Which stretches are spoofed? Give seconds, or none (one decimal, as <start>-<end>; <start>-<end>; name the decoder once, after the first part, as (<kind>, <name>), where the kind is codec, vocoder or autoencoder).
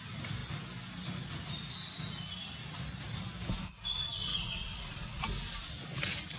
4.3-5.2 (vocoder, Vocos)